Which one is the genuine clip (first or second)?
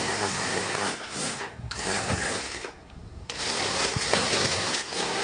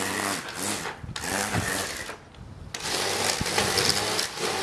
second